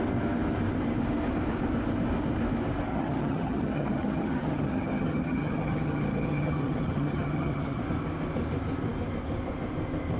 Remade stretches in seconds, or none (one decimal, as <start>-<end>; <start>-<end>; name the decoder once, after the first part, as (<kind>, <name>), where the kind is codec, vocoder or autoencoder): 2.9-7.8 (vocoder, HiFi-GAN)